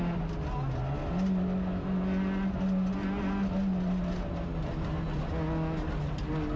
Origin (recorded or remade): recorded